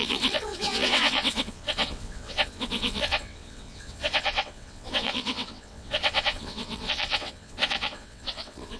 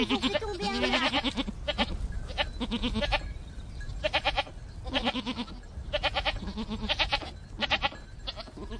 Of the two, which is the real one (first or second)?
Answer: second